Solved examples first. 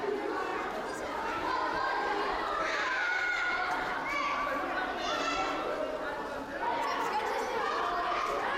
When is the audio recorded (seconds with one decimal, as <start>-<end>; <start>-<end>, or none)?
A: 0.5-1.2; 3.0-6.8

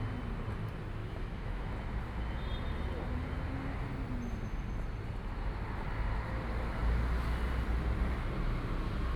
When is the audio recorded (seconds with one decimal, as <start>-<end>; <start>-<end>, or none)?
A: 0.0-1.0; 1.7-9.2

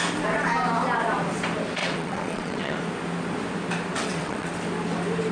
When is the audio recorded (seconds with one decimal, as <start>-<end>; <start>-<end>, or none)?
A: 0.0-1.8; 2.8-3.9; 4.5-5.3